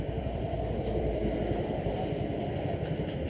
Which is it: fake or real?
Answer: fake